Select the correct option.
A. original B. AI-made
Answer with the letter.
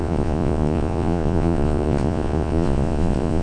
B